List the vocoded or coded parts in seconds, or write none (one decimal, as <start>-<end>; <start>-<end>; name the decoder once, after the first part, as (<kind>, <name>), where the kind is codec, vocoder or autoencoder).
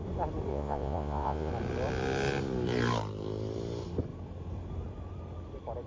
0.5-1.5 (vocoder, Vocos)